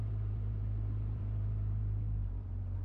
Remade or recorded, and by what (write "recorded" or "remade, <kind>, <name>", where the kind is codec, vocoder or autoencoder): remade, vocoder, BigVGAN v2